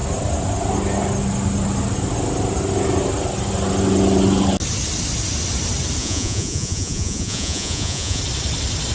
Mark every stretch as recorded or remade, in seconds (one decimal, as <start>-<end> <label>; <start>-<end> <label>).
0.0-6.0 recorded; 6.0-8.2 remade; 8.2-8.9 recorded